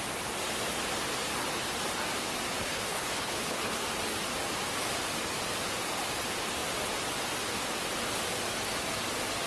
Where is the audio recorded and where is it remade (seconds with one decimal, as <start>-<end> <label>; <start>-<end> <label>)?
0.0-2.6 recorded; 2.6-3.8 remade; 3.8-9.5 recorded